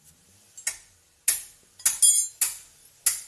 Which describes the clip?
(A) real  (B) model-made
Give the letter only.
A